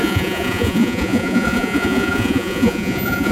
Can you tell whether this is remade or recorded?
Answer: remade